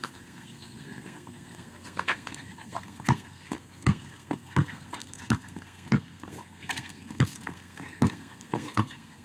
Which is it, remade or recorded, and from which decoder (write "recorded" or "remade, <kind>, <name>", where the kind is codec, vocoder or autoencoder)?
remade, codec, SNAC